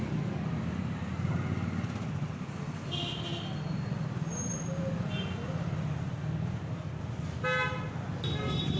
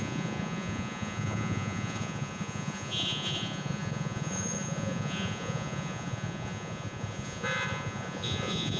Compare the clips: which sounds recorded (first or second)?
first